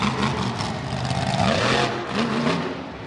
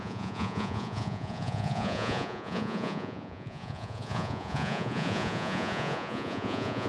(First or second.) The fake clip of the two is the second